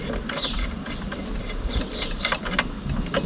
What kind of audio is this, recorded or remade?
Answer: recorded